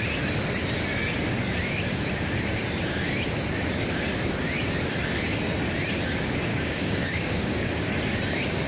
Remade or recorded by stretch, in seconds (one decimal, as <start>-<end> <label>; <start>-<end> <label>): 0.0-6.5 recorded; 6.5-7.9 remade; 7.9-8.7 recorded